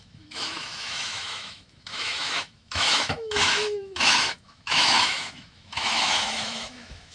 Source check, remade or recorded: remade